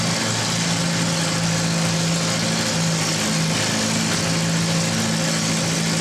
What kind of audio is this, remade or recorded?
recorded